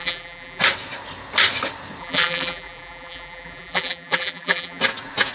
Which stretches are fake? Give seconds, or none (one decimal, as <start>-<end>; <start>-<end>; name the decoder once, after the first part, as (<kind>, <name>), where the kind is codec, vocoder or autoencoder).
0.0-0.6 (vocoder, BigVGAN v2); 2.0-4.8

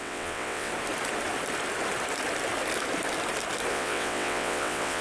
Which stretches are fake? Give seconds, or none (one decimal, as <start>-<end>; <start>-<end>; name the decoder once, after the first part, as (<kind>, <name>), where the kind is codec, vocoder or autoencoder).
0.0-0.7 (vocoder, WaveNeXt); 3.7-5.0

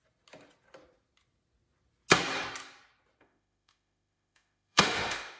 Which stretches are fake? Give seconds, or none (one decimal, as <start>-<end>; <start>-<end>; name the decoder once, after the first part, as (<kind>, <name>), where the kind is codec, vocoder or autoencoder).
3.2-5.4 (autoencoder, DAC-VAE)

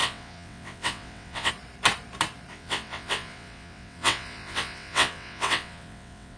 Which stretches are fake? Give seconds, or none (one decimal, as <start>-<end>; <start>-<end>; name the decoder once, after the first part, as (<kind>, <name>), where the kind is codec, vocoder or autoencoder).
0.0-1.5 (vocoder, WaveNeXt); 2.5-6.4

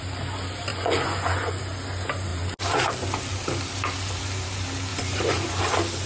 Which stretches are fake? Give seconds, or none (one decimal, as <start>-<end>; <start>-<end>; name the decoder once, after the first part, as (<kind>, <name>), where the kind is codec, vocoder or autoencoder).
0.7-1.6 (vocoder, Vocos); 4.9-5.6

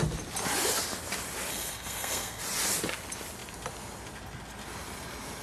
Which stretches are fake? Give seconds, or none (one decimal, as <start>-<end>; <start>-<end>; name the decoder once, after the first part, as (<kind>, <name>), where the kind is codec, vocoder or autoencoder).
1.5-2.4 (codec, SNAC)

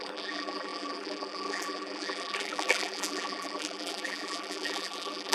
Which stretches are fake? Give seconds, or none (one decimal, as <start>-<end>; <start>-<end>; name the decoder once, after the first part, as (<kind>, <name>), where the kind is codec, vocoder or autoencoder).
0.0-5.3 (vocoder, BigVGAN v2)